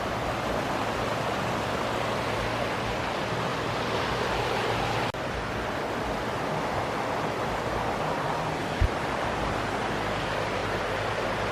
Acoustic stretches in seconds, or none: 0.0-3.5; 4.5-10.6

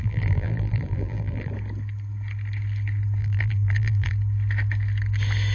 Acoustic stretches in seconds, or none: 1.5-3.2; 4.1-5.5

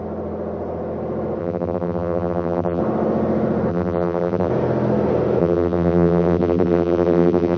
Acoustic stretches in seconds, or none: 0.0-1.4; 2.8-3.7; 4.5-5.4

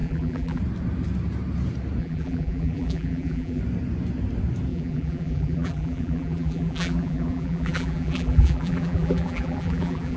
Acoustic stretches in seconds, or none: 0.6-2.0; 3.6-4.7

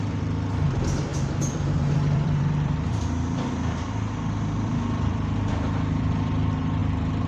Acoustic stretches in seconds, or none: 6.8-7.3

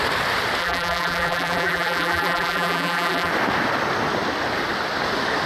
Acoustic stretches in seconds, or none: 0.0-0.6; 3.3-5.5

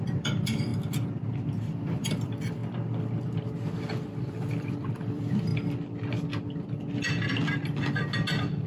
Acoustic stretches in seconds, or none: 0.7-1.6; 2.6-4.2; 5.5-8.7